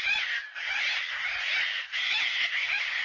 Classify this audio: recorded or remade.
recorded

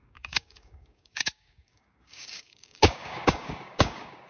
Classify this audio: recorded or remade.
remade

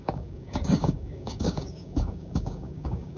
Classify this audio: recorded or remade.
remade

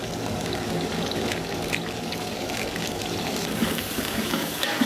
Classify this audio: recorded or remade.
remade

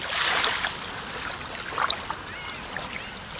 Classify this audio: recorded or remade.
recorded